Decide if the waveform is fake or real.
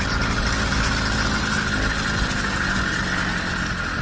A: real